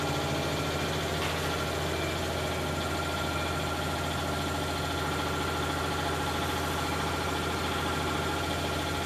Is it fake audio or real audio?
real